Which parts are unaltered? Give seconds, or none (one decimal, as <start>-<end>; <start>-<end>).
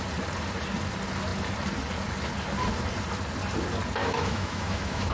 0.0-4.0